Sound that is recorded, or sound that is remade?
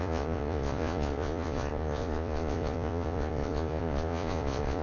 remade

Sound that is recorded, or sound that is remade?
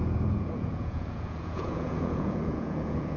remade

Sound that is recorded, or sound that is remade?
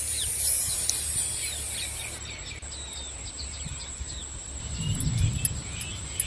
recorded